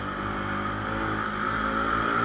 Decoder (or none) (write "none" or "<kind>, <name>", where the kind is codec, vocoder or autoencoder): none